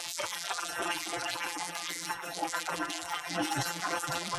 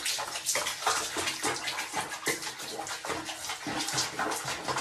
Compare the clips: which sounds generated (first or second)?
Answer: first